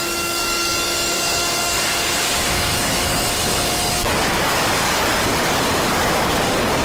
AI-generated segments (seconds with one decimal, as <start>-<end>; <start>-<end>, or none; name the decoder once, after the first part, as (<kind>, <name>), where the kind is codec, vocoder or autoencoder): 0.0-6.8 (codec, DAC)